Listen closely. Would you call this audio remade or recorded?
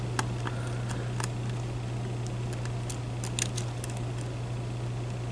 recorded